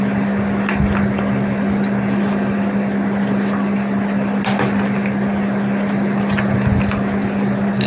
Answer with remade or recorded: recorded